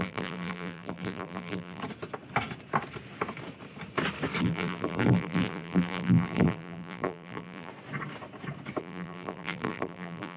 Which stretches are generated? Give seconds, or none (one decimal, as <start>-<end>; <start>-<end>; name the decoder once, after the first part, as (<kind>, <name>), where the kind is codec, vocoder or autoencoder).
0.0-1.8 (vocoder, BigVGAN v2); 4.4-7.7; 8.8-10.4